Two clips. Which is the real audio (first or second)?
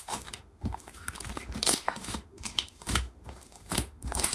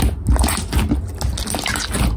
second